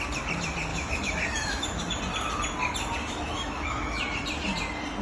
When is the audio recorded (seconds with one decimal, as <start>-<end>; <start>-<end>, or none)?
0.0-0.7; 2.0-3.0; 4.0-5.0